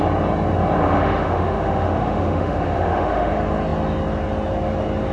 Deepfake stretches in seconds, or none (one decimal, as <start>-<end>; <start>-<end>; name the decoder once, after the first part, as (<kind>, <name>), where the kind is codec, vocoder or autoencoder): 0.8-3.3 (autoencoder, DAC-VAE)